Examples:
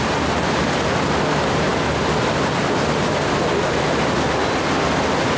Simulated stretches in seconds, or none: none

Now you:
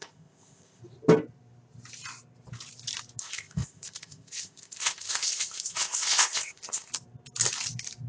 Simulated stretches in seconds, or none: 0.0-0.8 (codec, ZipCodec); 3.2-6.9

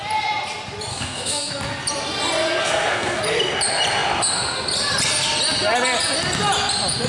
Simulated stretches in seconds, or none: 0.9-1.5 (codec, SNAC); 2.6-3.2